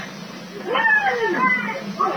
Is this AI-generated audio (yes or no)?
yes